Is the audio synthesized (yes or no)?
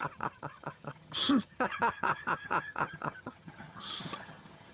yes